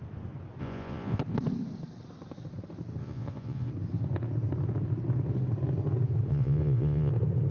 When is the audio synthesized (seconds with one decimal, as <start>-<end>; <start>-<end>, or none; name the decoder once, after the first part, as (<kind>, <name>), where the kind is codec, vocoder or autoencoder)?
0.6-1.2 (vocoder, Vocos); 3.0-3.7; 6.3-7.1